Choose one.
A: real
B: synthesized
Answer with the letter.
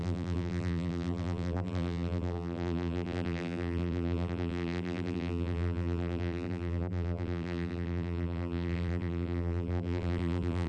B